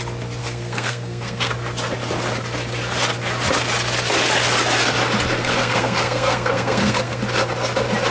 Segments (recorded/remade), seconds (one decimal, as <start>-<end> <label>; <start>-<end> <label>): 0.0-0.4 recorded; 0.4-1.5 remade; 1.5-5.4 recorded; 5.4-7.2 remade; 7.2-8.1 recorded